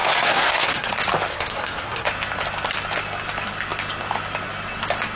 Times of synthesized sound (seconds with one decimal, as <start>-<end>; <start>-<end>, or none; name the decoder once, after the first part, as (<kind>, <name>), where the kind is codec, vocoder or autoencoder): 0.0-0.9 (codec, SNAC); 1.3-2.1